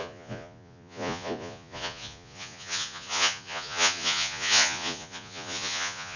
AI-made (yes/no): yes